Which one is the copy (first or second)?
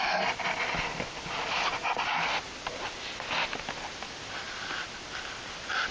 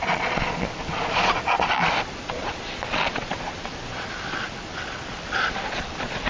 second